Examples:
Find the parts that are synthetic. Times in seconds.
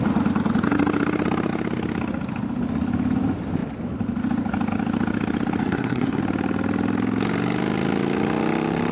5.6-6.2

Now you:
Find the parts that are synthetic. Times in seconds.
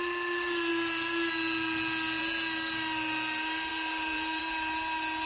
3.7-4.4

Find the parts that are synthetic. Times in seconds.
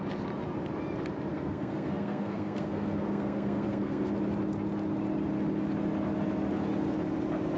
1.3-4.1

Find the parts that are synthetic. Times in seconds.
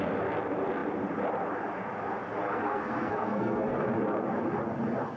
2.4-3.8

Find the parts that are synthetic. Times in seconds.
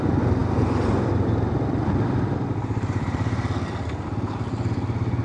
0.4-3.5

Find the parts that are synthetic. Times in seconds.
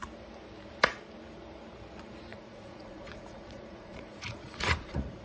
2.3-5.2